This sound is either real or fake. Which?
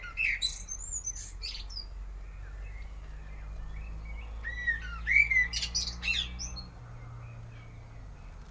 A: real